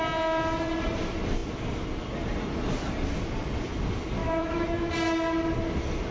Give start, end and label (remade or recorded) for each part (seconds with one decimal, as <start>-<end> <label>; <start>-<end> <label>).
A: 0.0-4.2 recorded; 4.2-4.9 remade; 4.9-6.1 recorded